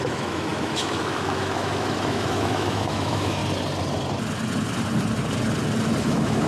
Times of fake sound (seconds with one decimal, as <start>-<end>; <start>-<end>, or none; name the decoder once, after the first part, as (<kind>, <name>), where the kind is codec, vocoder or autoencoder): 0.0-3.4 (autoencoder, DAC-VAE); 6.0-6.5